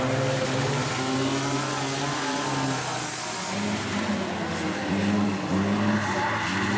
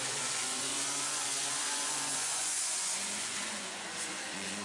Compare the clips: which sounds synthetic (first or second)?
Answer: second